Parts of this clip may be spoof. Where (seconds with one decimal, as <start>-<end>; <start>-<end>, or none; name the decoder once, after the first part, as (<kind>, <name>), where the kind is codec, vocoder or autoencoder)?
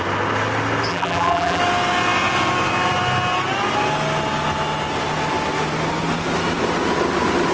0.9-1.6 (vocoder, BigVGAN v2)